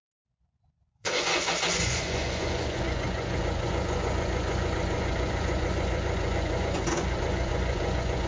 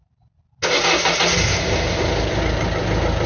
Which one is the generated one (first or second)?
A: first